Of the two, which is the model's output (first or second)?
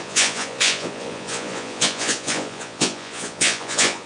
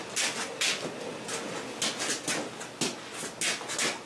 first